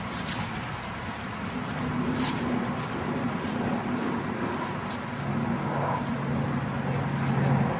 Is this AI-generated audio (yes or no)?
no